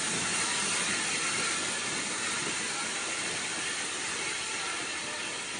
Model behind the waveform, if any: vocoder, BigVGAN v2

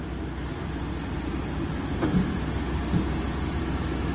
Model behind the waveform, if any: none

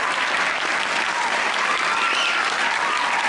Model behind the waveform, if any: none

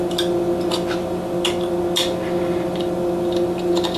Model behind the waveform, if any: none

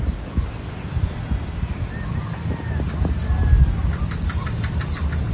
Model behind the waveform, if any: none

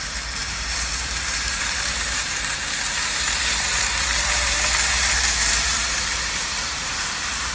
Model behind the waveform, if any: vocoder, BigVGAN v2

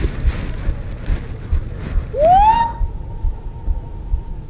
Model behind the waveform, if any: none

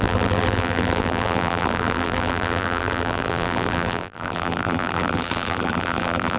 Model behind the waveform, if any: vocoder, BigVGAN v2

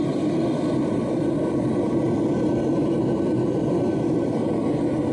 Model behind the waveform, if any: vocoder, BigVGAN v2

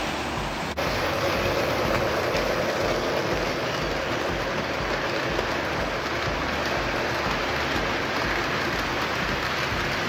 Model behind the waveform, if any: none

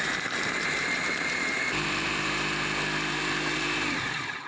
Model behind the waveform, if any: vocoder, BigVGAN v2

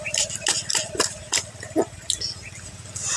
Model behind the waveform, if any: none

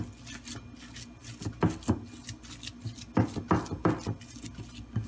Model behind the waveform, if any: none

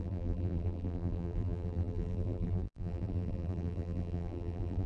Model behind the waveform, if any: vocoder, BigVGAN v2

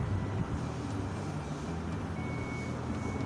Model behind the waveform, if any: none